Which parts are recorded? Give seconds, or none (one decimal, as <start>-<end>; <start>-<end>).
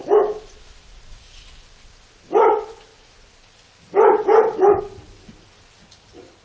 0.0-2.9; 4.8-6.4